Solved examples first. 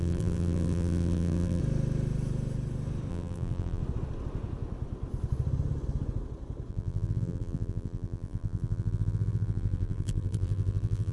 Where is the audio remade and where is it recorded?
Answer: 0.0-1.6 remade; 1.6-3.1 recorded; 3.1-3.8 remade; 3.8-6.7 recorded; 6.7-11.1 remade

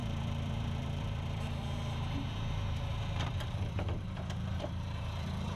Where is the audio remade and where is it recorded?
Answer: 0.0-5.6 remade

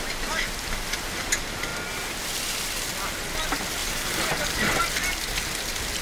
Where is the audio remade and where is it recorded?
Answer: 0.0-3.8 recorded; 3.8-4.8 remade; 4.8-6.0 recorded

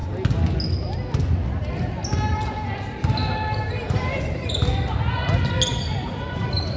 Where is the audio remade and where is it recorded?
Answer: 0.0-3.3 recorded; 3.3-4.7 remade; 4.7-5.9 recorded; 5.9-6.8 remade

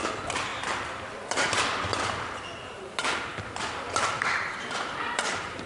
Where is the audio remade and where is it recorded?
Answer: 0.0-0.5 recorded; 0.5-2.0 remade; 2.0-3.3 recorded; 3.3-5.7 remade